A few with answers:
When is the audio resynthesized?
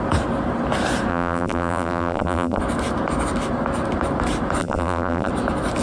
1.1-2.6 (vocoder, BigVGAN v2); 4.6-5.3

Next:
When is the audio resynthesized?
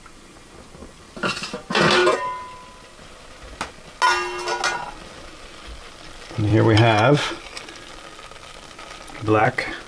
0.8-1.5 (vocoder, BigVGAN v2); 4.8-8.0; 9.4-9.9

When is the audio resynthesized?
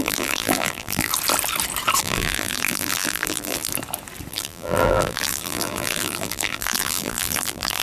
0.0-1.1 (vocoder, BigVGAN v2); 2.0-3.7; 4.3-7.8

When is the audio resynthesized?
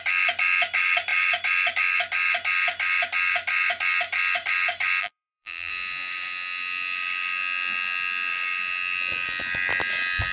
5.0-5.7 (vocoder, BigVGAN v2)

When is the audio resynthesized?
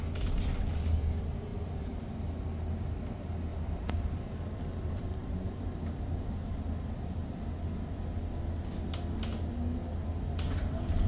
1.5-2.1 (vocoder, BigVGAN v2); 3.5-6.6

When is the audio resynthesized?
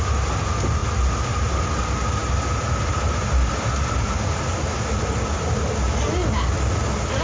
2.2-5.4 (vocoder, BigVGAN v2)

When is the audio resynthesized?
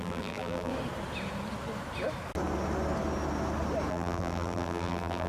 0.0-0.7 (vocoder, BigVGAN v2); 3.9-5.3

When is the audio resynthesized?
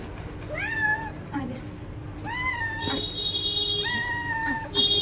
0.9-1.4 (vocoder, BigVGAN v2)